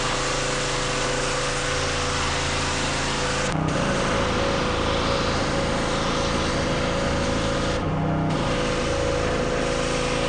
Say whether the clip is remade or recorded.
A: recorded